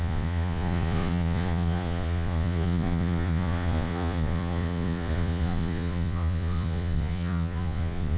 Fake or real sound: fake